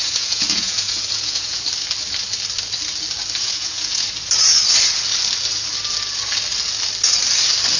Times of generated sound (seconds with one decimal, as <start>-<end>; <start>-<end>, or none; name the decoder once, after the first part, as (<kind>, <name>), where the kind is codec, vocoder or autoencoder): 0.0-1.6 (vocoder, Vocos); 3.4-4.1